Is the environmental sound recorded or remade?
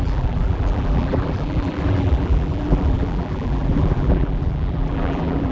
remade